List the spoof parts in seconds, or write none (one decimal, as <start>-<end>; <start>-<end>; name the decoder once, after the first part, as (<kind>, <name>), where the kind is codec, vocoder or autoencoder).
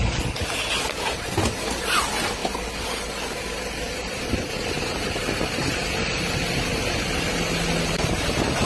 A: none